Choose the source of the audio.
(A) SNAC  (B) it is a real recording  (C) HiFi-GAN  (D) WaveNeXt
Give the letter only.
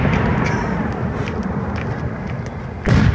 B